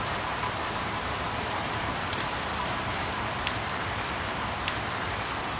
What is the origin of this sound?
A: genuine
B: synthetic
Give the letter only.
B